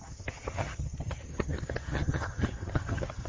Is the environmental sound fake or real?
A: fake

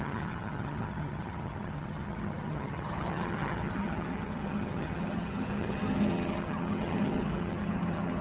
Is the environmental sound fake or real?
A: fake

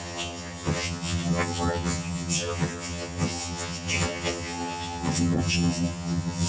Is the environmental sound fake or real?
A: fake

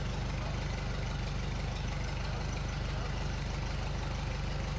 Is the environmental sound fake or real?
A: real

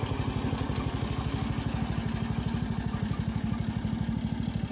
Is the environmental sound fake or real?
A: real